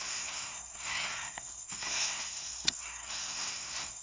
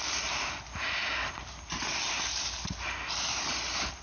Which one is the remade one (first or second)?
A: first